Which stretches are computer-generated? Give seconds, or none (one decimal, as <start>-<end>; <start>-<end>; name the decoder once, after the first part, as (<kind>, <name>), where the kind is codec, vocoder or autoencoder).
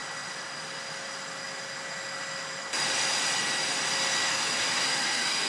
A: 4.3-5.5 (codec, SNAC)